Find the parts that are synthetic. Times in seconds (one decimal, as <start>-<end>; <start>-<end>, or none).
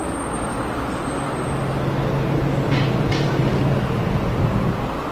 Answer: none